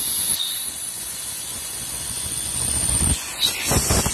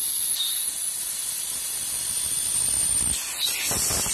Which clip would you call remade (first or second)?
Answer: first